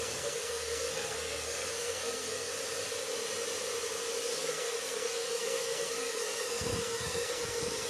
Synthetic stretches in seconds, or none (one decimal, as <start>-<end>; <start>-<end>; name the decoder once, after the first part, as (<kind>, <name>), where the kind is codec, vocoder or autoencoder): 0.0-2.5 (codec, SNAC); 4.4-7.9